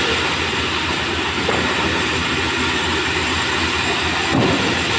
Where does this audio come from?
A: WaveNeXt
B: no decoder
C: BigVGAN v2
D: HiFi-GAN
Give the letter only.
B